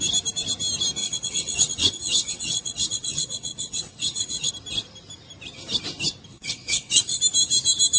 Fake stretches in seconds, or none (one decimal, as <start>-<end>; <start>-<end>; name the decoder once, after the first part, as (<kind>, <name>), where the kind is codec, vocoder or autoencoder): 1.0-4.5 (vocoder, WaveNeXt); 6.3-7.2